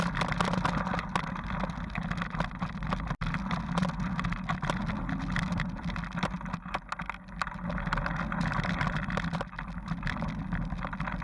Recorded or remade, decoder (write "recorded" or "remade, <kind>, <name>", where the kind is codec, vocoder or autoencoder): recorded